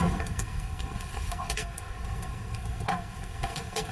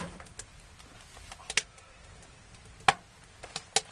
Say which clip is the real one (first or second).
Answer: second